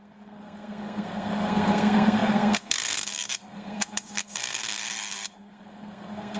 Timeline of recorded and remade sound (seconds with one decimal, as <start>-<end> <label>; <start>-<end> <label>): 0.0-6.4 remade

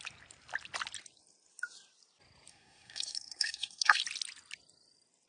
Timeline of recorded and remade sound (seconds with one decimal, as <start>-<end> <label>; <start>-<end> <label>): 0.0-2.5 recorded; 2.5-4.0 remade; 4.0-5.3 recorded

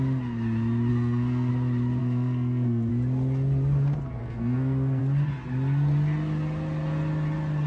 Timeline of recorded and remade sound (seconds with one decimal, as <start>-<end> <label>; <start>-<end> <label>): 0.0-0.9 recorded; 0.9-1.5 remade; 1.5-2.0 recorded; 2.0-2.9 remade; 2.9-4.2 recorded; 4.2-5.0 remade; 5.0-7.7 recorded

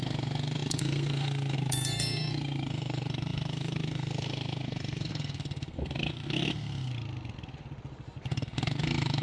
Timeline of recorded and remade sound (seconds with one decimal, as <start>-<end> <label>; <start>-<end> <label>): 0.0-6.9 remade; 6.9-8.3 recorded; 8.3-9.2 remade